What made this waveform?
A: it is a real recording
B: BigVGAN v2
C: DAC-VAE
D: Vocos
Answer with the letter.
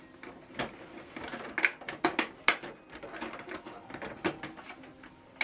A